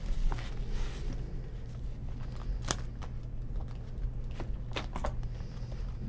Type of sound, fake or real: real